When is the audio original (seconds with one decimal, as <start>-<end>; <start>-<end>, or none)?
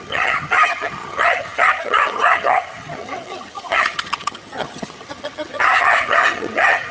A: none